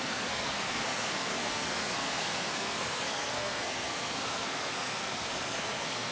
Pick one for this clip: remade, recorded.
remade